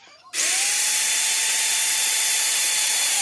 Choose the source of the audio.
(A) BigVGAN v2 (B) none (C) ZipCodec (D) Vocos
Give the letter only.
A